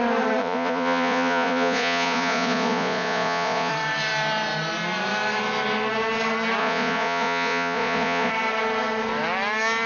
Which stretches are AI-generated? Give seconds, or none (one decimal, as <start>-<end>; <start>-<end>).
0.4-3.7; 6.6-8.3